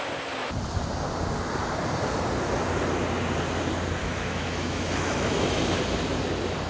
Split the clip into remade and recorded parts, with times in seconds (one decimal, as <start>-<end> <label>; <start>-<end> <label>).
0.0-4.0 recorded; 4.0-5.8 remade; 5.8-6.7 recorded